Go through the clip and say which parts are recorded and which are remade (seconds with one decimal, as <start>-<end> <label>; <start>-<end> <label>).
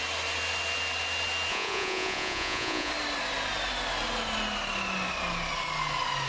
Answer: 0.0-1.5 recorded; 1.5-2.9 remade; 2.9-6.3 recorded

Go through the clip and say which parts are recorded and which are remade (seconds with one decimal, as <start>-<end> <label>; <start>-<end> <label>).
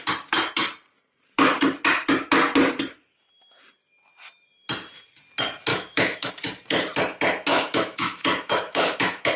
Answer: 0.0-5.7 recorded; 5.7-6.3 remade; 6.3-7.5 recorded; 7.5-9.4 remade